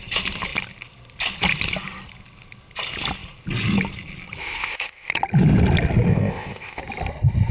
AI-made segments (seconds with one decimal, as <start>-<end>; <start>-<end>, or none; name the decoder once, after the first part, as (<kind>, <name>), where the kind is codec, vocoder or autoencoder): 4.4-5.1 (codec, ZipCodec); 6.1-6.8